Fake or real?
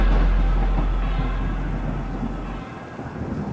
real